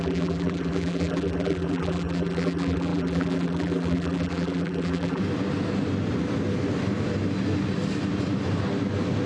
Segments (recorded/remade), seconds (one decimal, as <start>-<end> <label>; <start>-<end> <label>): 0.0-5.2 remade; 5.2-9.3 recorded